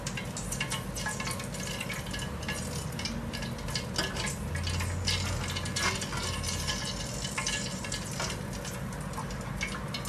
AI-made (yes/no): no